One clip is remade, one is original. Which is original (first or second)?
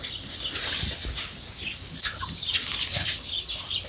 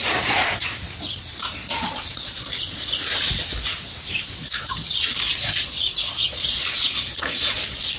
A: first